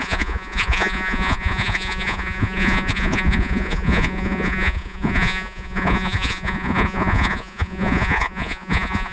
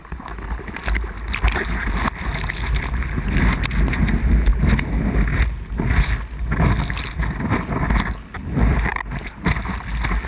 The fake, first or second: first